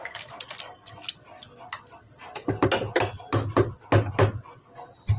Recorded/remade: recorded